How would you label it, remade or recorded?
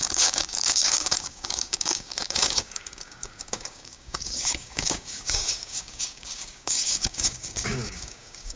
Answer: remade